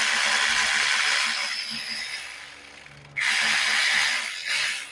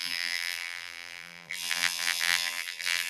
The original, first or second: first